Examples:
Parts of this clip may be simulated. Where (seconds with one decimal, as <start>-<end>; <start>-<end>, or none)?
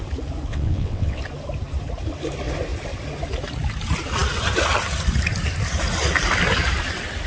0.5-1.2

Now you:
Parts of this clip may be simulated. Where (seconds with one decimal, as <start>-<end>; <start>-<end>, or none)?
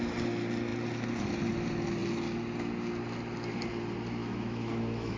4.2-5.2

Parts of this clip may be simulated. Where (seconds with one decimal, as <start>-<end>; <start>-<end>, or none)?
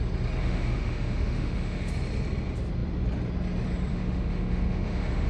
0.4-1.9; 3.9-5.3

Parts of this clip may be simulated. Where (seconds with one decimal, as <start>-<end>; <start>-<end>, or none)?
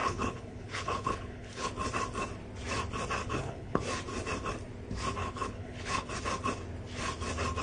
0.0-1.7; 3.2-3.8; 5.2-6.1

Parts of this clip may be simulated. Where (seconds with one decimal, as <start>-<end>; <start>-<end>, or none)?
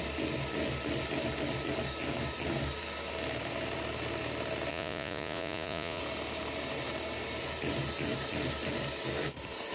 4.7-6.0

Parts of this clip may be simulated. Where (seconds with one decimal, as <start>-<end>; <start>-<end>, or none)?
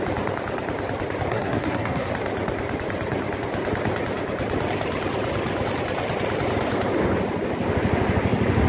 1.3-2.1